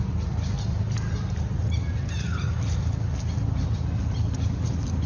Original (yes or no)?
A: yes